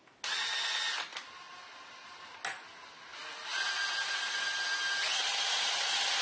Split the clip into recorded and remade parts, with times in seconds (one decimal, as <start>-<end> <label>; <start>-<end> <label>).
0.0-6.2 recorded